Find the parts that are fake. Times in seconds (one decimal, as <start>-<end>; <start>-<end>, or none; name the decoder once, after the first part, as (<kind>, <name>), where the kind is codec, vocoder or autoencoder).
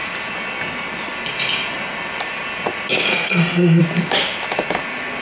3.1-3.8 (codec, SNAC)